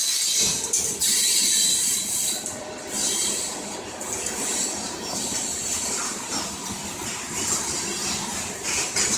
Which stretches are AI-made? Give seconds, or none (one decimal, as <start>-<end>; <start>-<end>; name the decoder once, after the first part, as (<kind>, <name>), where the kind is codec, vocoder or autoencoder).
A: 0.0-4.0 (vocoder, BigVGAN v2)